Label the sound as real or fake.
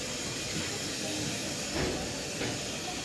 real